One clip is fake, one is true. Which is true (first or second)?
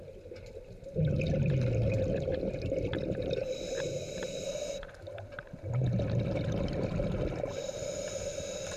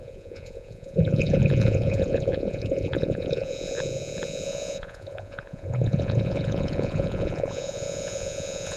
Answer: first